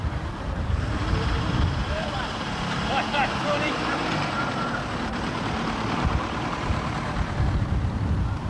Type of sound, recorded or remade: remade